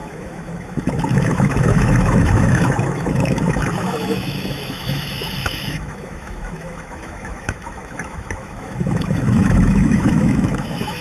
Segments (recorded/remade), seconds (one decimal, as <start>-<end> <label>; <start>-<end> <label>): 0.0-11.0 remade